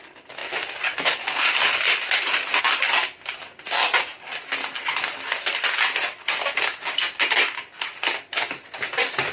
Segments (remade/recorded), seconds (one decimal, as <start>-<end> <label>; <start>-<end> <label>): 0.0-0.4 recorded; 0.4-2.6 remade; 2.6-9.3 recorded